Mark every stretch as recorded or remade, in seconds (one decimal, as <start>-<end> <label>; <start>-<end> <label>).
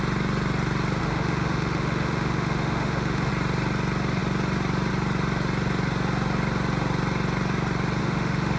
0.0-1.0 recorded; 1.0-3.3 remade; 3.3-8.0 recorded; 8.0-8.6 remade